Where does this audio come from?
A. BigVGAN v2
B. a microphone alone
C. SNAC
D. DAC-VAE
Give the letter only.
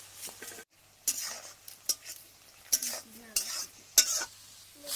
B